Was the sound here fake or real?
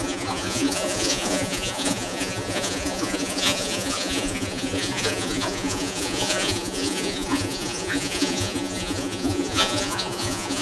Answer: fake